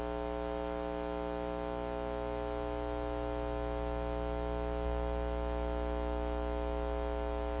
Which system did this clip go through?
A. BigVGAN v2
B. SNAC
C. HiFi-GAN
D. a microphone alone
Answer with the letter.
D